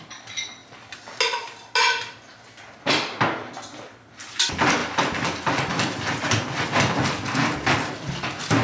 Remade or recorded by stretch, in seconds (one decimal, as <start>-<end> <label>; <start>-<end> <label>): 0.0-8.6 recorded